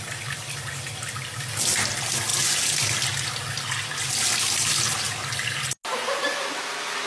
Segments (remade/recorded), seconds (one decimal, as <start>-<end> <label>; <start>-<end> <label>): 0.0-7.1 recorded

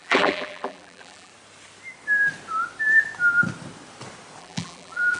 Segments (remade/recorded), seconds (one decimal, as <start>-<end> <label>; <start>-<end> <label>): 0.0-1.3 remade; 1.3-4.4 recorded; 4.4-5.2 remade

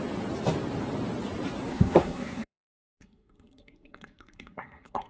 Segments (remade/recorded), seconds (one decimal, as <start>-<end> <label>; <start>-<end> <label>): 0.0-1.7 recorded; 1.7-5.1 remade

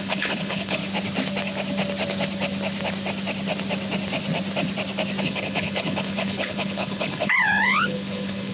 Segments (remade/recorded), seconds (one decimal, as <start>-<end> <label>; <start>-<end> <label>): 0.0-0.8 remade; 0.8-5.2 recorded; 5.2-8.5 remade

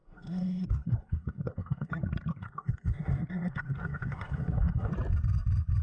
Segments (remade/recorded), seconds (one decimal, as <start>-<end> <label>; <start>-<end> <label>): 0.0-1.9 remade; 1.9-2.3 recorded; 2.3-4.9 remade; 4.9-5.8 recorded